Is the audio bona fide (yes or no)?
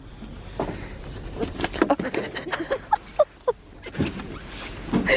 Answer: yes